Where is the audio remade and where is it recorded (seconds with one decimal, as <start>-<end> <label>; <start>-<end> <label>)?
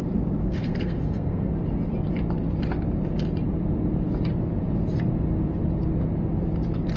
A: 0.0-0.4 recorded; 0.4-1.5 remade; 1.5-7.0 recorded